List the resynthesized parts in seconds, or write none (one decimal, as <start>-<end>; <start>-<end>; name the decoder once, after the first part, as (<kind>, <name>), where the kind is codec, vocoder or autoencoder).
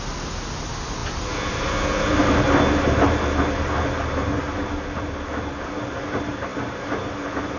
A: none